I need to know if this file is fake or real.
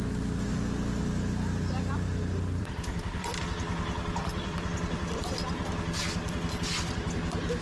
fake